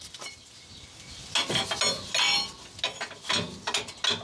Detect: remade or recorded recorded